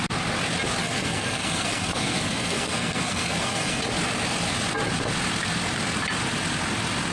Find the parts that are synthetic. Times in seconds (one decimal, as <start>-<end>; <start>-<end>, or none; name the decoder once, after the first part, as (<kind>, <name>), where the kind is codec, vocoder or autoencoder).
0.8-3.8 (codec, SNAC)